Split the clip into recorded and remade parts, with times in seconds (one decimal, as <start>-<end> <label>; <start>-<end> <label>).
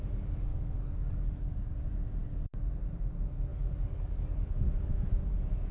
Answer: 0.0-0.5 recorded; 0.5-1.8 remade; 1.8-3.5 recorded; 3.5-4.7 remade; 4.7-5.7 recorded